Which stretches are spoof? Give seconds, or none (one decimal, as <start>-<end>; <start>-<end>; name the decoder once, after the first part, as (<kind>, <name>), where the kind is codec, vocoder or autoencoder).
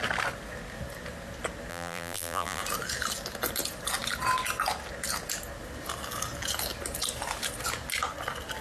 1.7-2.6 (vocoder, BigVGAN v2)